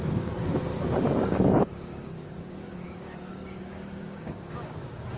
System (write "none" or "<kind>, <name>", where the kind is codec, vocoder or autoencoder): codec, DAC